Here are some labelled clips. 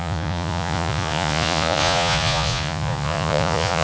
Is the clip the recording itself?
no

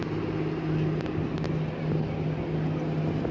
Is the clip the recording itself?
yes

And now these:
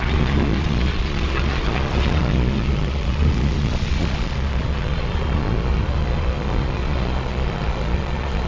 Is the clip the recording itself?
no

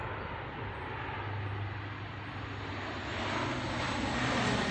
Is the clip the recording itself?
yes